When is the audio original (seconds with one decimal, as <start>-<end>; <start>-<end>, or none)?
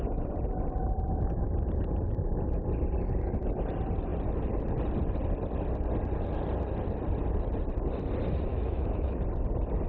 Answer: 0.0-8.5; 9.2-9.9